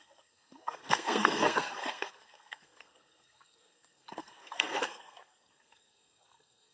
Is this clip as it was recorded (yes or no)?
no